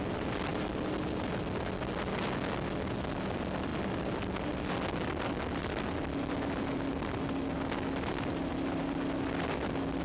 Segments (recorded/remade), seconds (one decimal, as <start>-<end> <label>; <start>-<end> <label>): 0.0-10.0 recorded